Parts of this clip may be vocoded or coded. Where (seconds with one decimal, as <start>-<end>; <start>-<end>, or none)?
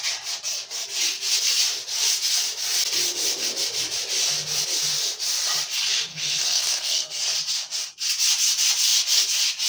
6.1-7.2